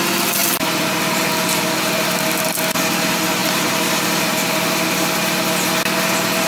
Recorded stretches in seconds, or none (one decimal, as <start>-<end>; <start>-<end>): 0.0-0.4; 1.3-3.4; 5.4-6.5